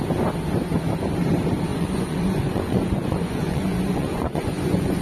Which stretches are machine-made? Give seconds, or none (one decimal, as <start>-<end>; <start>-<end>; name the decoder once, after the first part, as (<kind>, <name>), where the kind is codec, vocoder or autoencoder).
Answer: 1.7-5.0 (vocoder, Vocos)